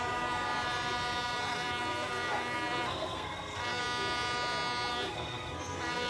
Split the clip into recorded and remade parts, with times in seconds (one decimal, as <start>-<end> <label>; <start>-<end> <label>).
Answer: 0.0-1.4 recorded; 1.4-3.8 remade; 3.8-4.9 recorded; 4.9-6.1 remade